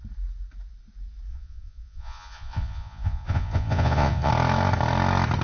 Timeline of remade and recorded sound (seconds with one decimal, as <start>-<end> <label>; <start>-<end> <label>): 0.0-1.3 recorded; 1.3-4.3 remade; 4.3-5.4 recorded

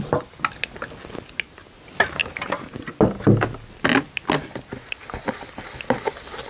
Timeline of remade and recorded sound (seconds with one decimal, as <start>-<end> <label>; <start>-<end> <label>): 0.0-6.5 recorded

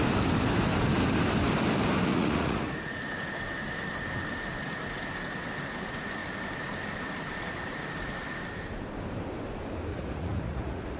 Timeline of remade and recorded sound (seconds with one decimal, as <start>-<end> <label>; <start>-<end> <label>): 0.0-2.1 recorded; 2.1-3.0 remade; 3.0-9.9 recorded; 9.9-11.0 remade

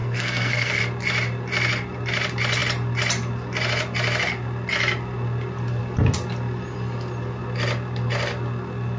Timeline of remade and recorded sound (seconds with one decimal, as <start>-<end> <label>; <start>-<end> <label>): 0.0-0.8 remade; 0.8-9.0 recorded

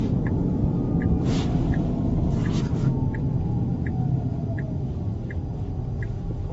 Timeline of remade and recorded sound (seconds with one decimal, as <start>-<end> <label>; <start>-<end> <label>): 0.0-0.6 recorded; 0.6-2.5 remade; 2.5-6.5 recorded

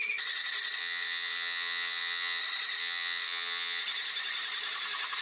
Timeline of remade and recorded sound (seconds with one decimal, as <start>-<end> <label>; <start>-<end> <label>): 0.0-0.8 recorded; 0.8-2.4 remade; 2.4-2.8 recorded; 2.8-3.8 remade; 3.8-5.2 recorded

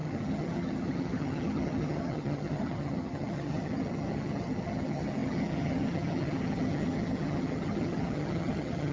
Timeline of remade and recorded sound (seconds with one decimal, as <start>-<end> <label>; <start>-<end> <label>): 0.0-8.9 remade

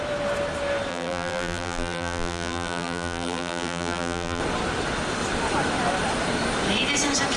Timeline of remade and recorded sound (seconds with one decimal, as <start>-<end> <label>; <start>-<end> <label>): 0.0-0.9 recorded; 0.9-4.4 remade; 4.4-7.4 recorded